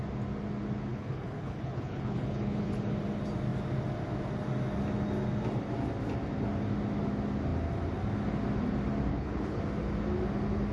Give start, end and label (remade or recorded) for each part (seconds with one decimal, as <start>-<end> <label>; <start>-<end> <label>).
0.0-0.9 recorded; 0.9-2.9 remade; 2.9-9.1 recorded; 9.1-9.6 remade; 9.6-10.7 recorded